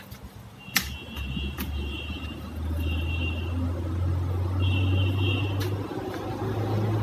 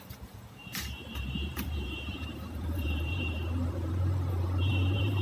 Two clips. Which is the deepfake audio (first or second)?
second